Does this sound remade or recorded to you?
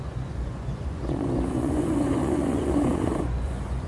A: remade